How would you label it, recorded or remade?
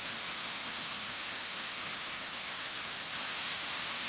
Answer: remade